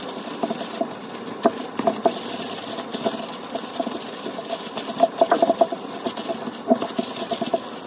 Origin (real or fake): real